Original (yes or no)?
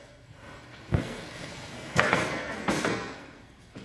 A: no